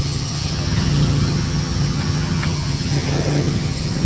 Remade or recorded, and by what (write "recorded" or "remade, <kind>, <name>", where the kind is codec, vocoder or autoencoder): remade, vocoder, HiFi-GAN